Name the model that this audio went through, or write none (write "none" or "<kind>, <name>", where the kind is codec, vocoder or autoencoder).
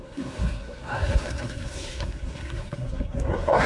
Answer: codec, SNAC